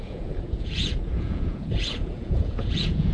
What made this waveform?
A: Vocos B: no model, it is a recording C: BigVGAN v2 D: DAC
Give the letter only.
A